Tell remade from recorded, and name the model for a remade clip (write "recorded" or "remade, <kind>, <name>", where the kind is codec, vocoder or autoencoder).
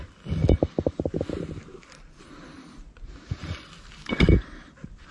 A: recorded